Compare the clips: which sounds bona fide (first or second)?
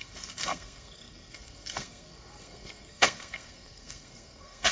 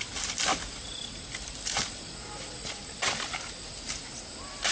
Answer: second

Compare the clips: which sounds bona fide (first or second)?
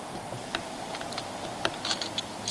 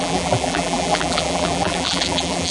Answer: first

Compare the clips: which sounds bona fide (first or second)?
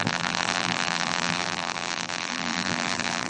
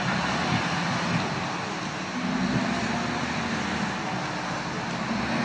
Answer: second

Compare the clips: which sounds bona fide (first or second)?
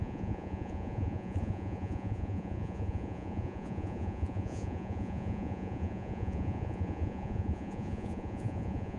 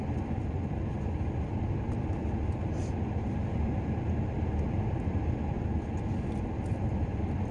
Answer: second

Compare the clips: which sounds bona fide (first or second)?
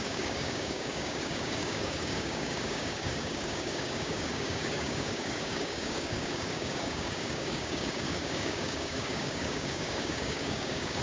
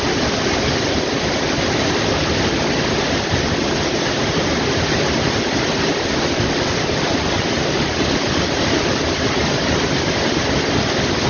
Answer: second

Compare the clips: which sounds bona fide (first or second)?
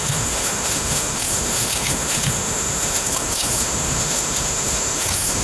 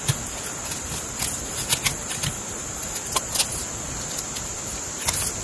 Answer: second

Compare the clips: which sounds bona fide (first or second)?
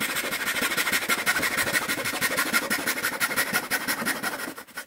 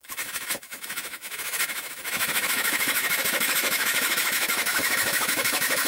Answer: first